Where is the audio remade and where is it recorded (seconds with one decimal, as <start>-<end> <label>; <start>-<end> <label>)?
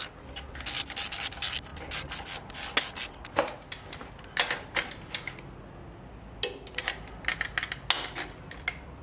0.0-9.0 recorded